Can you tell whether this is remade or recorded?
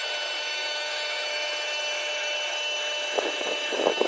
remade